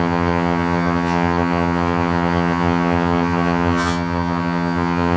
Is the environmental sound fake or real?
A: fake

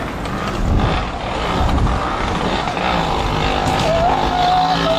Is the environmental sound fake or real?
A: real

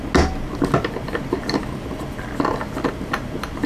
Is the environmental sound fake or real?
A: real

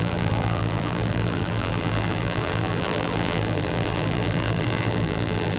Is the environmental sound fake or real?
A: fake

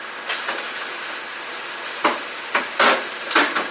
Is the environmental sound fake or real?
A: real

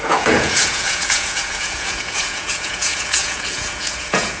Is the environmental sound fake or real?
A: fake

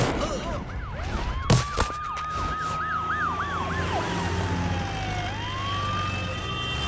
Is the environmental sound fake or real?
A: real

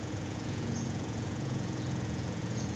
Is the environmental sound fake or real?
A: fake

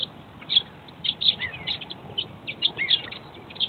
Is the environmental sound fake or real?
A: real